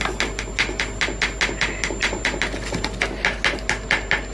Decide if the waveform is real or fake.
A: real